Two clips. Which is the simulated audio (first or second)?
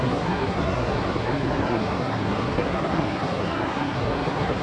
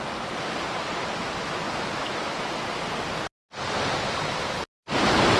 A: first